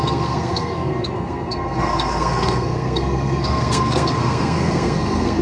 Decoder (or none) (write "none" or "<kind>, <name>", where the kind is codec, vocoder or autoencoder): codec, SNAC